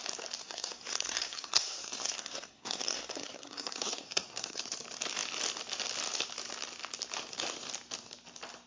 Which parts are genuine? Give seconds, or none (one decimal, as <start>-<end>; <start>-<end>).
0.0-0.4; 4.6-8.7

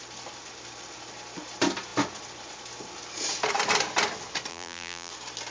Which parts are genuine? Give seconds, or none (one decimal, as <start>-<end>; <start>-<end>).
0.0-4.5; 5.1-5.5

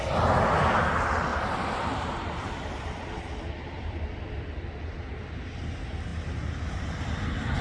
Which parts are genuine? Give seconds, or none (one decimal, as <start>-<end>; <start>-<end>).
0.0-1.3; 3.1-6.1; 6.9-7.6

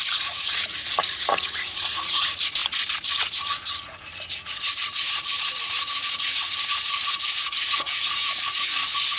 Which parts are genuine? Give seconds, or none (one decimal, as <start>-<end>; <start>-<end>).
2.6-3.2; 4.9-5.7

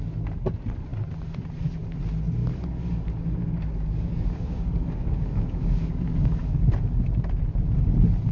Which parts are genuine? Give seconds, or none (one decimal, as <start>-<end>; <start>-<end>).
0.0-2.4; 6.7-8.3

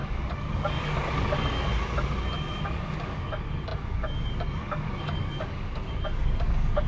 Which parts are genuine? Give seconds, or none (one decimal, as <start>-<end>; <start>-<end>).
1.7-2.6